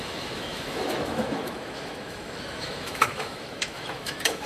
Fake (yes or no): yes